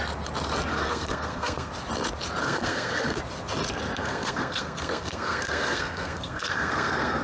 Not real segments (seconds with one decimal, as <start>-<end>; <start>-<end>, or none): 0.7-1.7; 2.4-3.2; 4.0-7.2